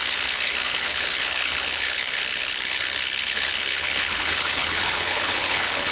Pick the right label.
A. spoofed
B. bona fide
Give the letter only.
A